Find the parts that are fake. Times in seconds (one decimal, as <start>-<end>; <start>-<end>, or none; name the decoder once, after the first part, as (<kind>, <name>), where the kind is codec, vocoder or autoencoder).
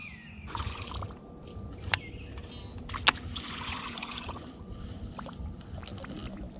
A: 0.0-0.9 (vocoder, Vocos); 3.3-4.7